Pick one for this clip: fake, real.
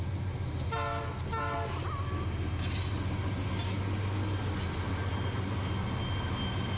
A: real